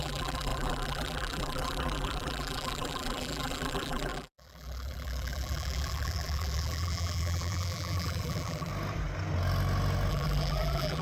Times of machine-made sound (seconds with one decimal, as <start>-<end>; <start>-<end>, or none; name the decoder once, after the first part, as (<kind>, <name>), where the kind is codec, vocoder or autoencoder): 0.0-8.7 (vocoder, BigVGAN v2); 10.1-11.0